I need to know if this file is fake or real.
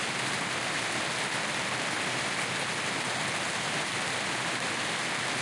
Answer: real